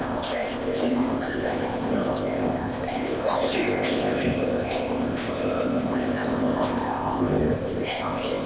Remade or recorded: remade